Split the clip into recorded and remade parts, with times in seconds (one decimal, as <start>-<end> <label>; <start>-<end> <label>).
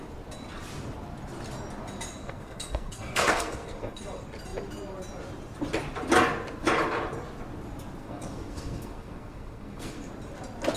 0.0-2.2 recorded; 2.2-4.0 remade; 4.0-8.0 recorded; 8.0-10.1 remade; 10.1-10.8 recorded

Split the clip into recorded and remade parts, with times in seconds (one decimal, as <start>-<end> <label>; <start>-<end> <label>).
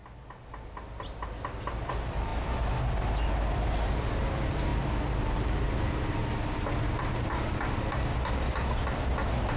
0.0-9.6 recorded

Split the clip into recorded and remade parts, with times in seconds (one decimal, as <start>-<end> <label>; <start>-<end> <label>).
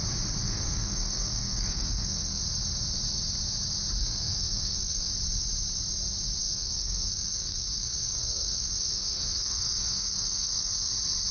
0.0-0.4 recorded; 0.4-2.4 remade; 2.4-4.0 recorded; 4.0-5.1 remade; 5.1-6.4 recorded; 6.4-10.9 remade; 10.9-11.3 recorded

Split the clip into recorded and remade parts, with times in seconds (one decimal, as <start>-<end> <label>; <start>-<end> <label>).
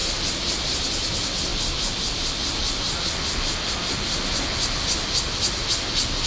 0.0-6.3 recorded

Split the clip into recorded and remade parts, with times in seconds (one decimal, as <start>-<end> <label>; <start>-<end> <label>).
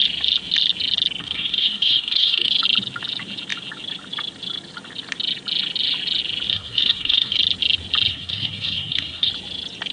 0.0-1.2 recorded; 1.2-2.5 remade; 2.5-6.5 recorded; 6.5-7.4 remade; 7.4-8.1 recorded; 8.1-9.3 remade; 9.3-9.9 recorded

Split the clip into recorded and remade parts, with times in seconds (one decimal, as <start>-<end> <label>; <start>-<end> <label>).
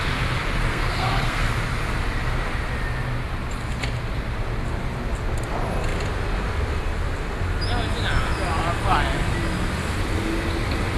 0.0-0.7 recorded; 0.7-1.5 remade; 1.5-11.0 recorded